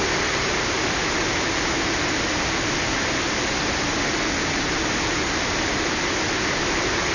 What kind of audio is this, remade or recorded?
recorded